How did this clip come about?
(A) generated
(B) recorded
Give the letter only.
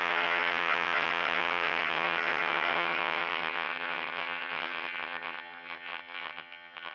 A